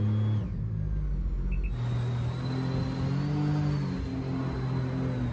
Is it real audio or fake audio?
real